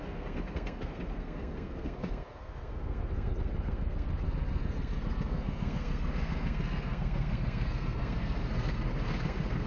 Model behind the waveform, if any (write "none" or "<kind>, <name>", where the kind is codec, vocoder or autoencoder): codec, SNAC